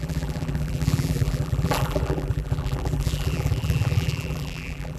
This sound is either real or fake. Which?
fake